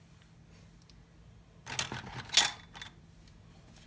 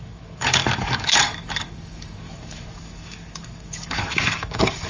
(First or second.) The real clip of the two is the first